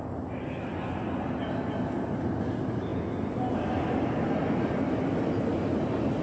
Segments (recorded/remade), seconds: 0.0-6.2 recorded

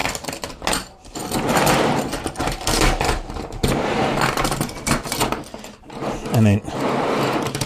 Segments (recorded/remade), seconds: 0.0-7.7 recorded

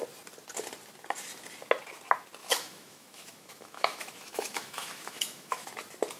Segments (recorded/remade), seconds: 0.0-2.4 recorded; 2.4-5.7 remade; 5.7-6.2 recorded

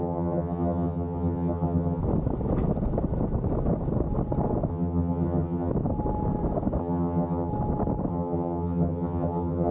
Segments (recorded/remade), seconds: 0.0-2.0 remade; 2.0-4.7 recorded; 4.7-5.7 remade; 5.7-6.8 recorded; 6.8-7.5 remade; 7.5-8.1 recorded; 8.1-9.7 remade

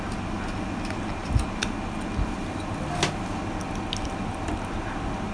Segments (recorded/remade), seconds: 0.0-5.3 recorded

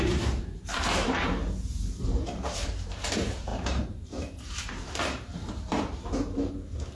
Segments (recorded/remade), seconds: 0.0-6.9 remade

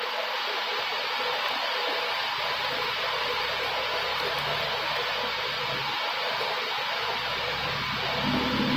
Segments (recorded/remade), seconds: 0.0-8.8 recorded

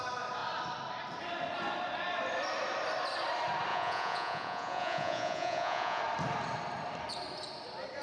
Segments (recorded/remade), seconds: 0.0-3.7 recorded; 3.7-6.0 remade; 6.0-8.0 recorded